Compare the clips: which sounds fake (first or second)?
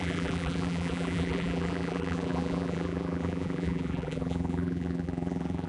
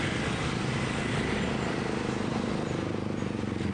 first